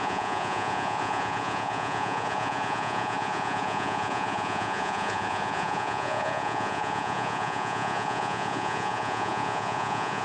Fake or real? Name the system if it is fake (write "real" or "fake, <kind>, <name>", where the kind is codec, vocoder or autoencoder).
fake, vocoder, Vocos